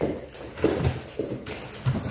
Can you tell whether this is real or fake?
real